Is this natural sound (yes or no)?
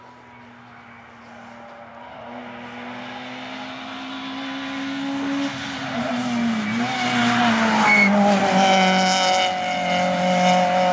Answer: yes